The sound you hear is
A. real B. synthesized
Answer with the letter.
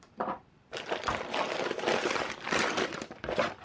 A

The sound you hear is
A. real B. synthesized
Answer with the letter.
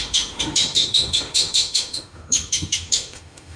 B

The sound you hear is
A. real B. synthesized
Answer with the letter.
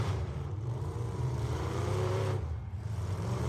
B